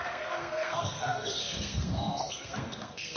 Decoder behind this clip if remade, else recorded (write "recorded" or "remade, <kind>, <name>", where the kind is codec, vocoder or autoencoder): remade, codec, SNAC